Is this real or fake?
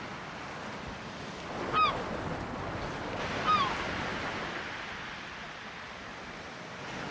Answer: real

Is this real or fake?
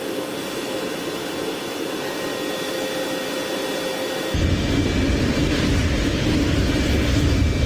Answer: real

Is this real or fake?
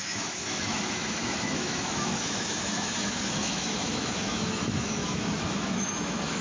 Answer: fake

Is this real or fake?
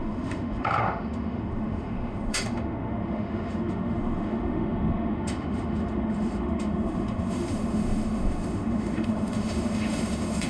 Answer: fake